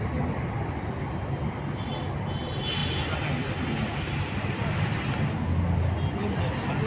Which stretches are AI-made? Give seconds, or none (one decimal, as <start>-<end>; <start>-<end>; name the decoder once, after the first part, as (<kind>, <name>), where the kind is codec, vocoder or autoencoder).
none